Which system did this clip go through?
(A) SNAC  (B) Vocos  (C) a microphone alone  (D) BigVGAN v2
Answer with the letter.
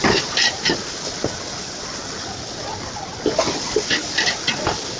C